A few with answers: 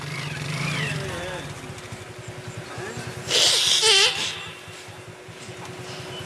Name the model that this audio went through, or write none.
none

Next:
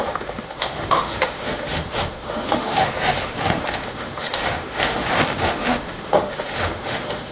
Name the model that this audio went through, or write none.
autoencoder, DAC-VAE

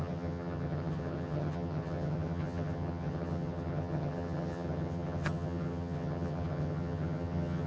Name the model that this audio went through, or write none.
vocoder, HiFi-GAN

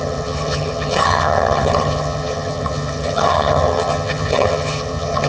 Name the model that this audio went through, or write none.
vocoder, HiFi-GAN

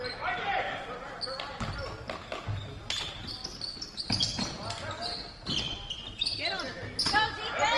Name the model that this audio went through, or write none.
none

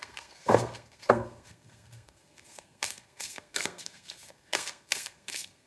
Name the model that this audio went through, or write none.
codec, SNAC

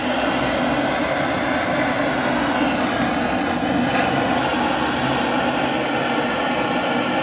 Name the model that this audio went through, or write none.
none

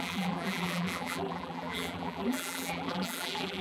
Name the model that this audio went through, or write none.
vocoder, BigVGAN v2